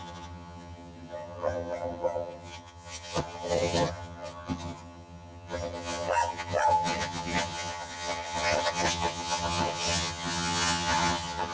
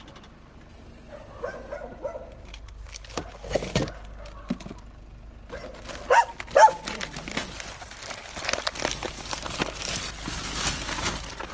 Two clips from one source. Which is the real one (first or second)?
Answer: second